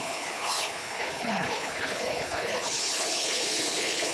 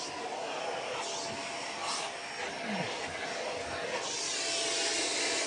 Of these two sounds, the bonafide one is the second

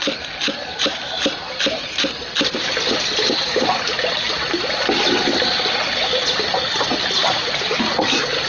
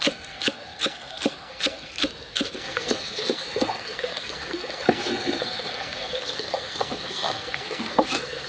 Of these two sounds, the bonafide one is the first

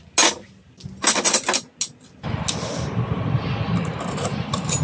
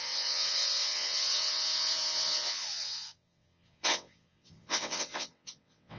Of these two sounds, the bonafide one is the first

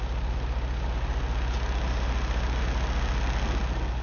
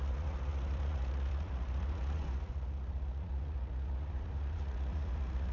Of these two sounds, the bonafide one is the first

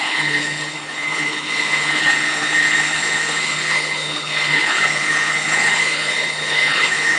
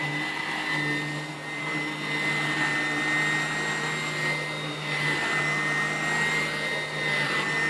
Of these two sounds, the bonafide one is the second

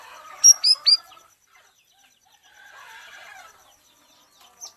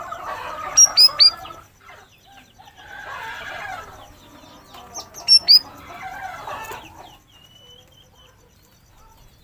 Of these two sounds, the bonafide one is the second